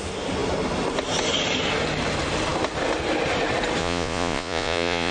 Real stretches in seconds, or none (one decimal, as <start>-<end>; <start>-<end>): 0.0-3.8